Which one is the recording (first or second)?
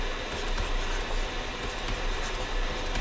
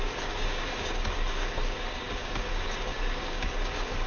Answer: first